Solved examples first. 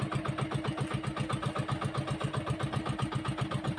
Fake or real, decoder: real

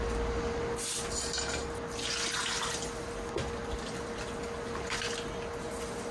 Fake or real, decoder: real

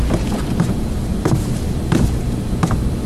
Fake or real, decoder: real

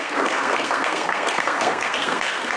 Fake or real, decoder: fake, codec, SNAC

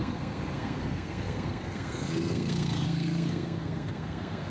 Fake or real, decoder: fake, codec, SNAC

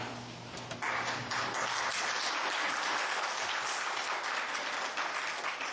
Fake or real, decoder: real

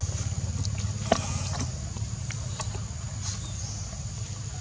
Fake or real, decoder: real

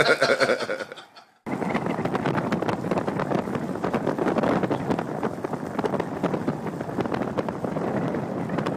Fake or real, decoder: real